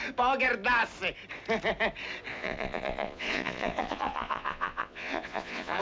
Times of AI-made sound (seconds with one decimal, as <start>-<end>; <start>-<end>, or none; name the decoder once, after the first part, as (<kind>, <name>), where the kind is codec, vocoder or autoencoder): 2.3-5.8 (vocoder, Vocos)